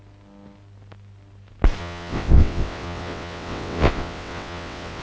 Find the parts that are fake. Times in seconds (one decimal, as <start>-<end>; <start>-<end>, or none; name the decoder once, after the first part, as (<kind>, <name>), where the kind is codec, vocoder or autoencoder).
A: 1.8-5.0 (vocoder, WaveNeXt)